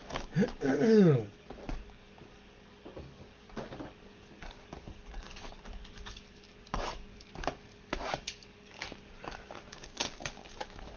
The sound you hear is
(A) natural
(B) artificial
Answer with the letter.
B